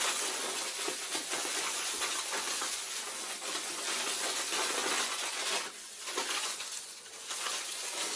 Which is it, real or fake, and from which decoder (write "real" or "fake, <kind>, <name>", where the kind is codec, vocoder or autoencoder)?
fake, vocoder, Vocos